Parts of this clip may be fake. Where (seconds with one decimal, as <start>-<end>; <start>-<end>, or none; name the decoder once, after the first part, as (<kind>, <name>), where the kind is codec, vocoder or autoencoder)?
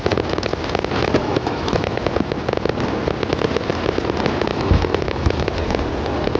1.2-2.0 (autoencoder, DAC-VAE); 4.5-5.5